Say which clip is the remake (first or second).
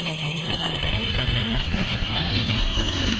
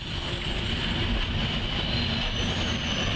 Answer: first